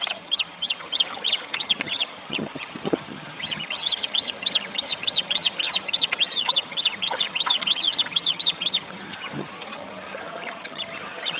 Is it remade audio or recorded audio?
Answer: remade